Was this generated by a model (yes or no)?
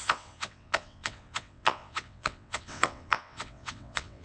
yes